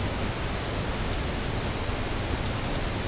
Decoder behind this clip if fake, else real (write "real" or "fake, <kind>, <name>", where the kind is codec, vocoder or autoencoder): real